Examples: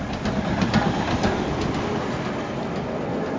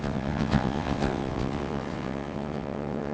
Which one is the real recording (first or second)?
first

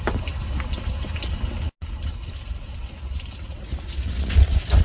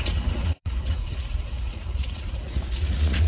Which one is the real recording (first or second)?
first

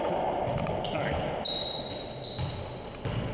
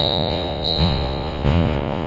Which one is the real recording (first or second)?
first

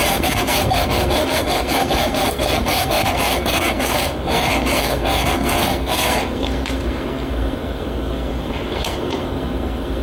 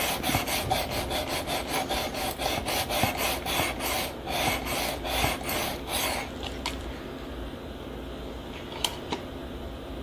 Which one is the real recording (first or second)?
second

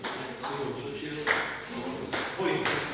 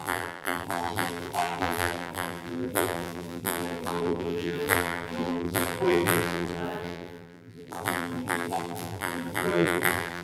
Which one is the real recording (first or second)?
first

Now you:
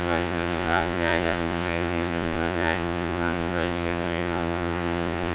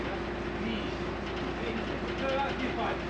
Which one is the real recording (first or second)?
second